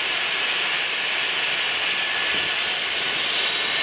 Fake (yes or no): no